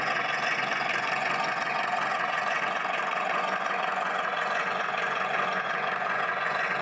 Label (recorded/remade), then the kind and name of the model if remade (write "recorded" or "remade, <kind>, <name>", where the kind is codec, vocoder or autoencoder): remade, vocoder, Vocos